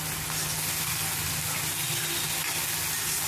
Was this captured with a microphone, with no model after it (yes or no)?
yes